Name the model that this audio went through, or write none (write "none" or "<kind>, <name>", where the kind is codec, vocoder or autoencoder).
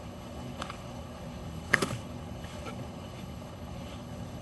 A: codec, HILCodec